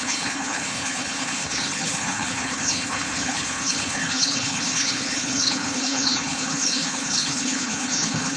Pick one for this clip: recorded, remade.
remade